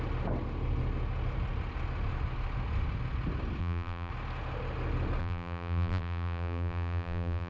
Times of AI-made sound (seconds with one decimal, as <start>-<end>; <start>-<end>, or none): 3.6-4.1; 5.2-7.5